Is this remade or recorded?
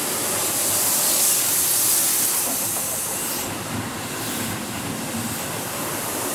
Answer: remade